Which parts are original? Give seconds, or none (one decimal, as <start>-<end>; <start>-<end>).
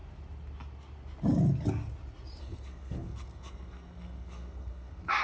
0.0-2.4